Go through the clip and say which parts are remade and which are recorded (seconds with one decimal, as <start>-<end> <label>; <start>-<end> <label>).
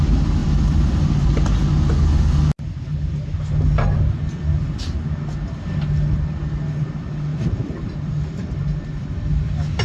0.0-0.4 recorded; 0.4-1.2 remade; 1.2-7.3 recorded; 7.3-8.9 remade; 8.9-9.8 recorded